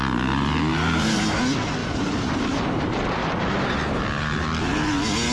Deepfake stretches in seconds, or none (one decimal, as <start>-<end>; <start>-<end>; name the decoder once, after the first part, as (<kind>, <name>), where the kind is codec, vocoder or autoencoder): 0.7-1.4 (vocoder, BigVGAN v2); 1.8-2.6; 3.2-4.0